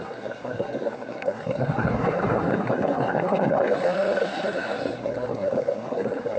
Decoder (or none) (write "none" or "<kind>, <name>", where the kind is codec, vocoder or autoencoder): codec, SNAC